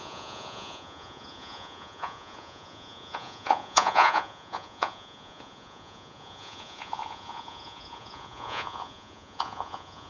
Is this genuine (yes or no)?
no